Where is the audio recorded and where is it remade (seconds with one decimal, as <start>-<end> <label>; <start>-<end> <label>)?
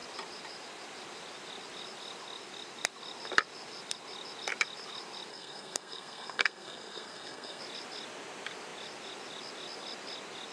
0.0-5.3 recorded; 5.3-7.6 remade; 7.6-10.5 recorded